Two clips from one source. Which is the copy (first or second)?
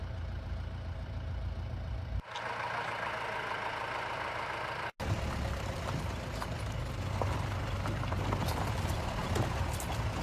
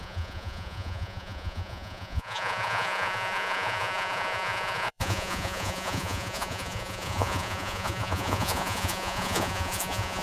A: second